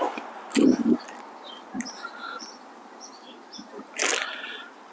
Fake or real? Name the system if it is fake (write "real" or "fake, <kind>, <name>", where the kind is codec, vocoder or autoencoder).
real